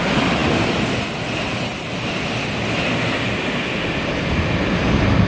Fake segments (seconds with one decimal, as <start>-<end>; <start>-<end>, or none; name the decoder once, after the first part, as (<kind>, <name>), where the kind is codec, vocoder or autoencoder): none